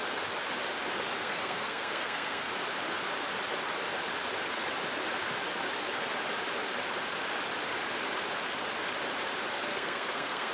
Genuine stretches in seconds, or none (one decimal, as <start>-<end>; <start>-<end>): 0.0-1.2; 2.5-9.7